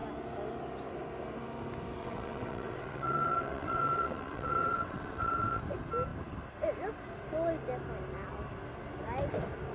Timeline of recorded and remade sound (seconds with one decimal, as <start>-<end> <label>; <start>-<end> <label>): 0.0-2.0 recorded; 2.0-5.6 remade; 5.6-9.7 recorded